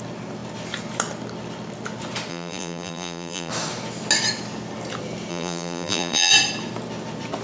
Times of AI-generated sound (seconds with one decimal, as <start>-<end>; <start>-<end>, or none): 2.3-3.5; 5.3-6.3